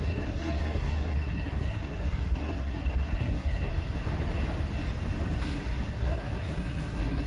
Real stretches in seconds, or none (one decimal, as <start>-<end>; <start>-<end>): 3.7-5.4